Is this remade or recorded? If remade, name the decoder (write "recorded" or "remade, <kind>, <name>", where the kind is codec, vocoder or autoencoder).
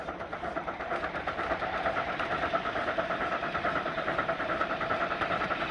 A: remade, vocoder, BigVGAN v2